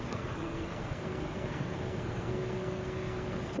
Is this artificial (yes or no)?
yes